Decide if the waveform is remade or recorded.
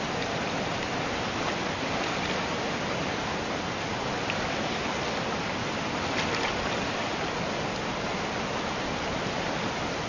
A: recorded